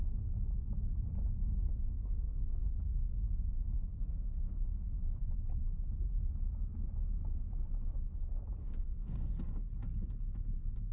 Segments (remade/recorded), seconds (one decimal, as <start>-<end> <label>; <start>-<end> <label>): 0.0-1.4 recorded; 1.4-5.3 remade; 5.3-8.6 recorded; 8.6-9.3 remade; 9.3-10.9 recorded